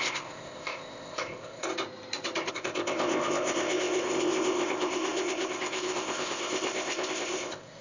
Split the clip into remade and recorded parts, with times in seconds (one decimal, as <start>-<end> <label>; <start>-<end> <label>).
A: 0.0-1.7 remade; 1.7-2.5 recorded; 2.5-7.8 remade